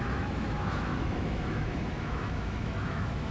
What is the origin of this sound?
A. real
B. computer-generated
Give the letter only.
B